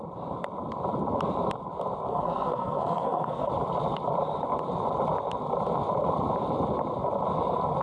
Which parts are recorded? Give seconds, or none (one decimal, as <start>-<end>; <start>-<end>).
0.0-2.1; 3.5-7.8